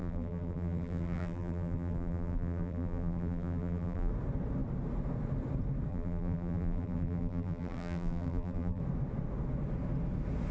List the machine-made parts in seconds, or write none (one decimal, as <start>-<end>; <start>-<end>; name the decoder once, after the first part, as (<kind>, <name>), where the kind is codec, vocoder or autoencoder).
0.0-4.1 (vocoder, BigVGAN v2); 5.9-8.8